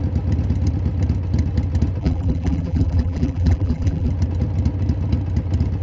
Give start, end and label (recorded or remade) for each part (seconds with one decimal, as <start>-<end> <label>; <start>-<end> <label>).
0.0-2.0 recorded; 2.0-4.1 remade; 4.1-5.8 recorded